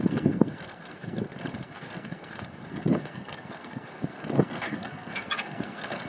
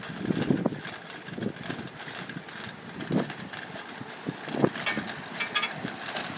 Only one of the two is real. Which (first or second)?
second